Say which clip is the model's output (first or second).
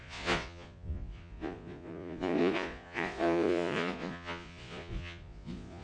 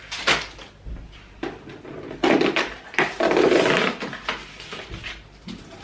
first